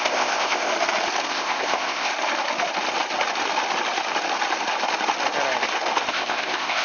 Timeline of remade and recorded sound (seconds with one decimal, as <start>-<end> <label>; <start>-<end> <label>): 0.0-0.7 remade; 0.7-1.3 recorded; 1.3-2.1 remade; 2.1-6.1 recorded; 6.1-6.8 remade